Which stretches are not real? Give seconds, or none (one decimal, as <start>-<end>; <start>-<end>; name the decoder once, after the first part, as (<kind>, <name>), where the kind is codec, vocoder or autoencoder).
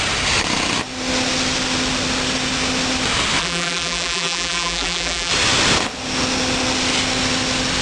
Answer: 3.4-5.3 (vocoder, BigVGAN v2)